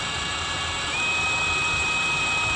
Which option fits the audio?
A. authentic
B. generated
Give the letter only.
B